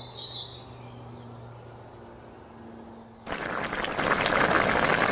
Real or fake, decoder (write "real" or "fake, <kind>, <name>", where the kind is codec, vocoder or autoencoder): real